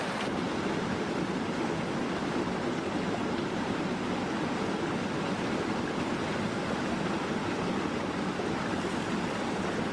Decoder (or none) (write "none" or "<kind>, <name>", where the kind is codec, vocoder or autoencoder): none